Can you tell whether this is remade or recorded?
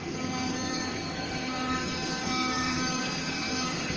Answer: remade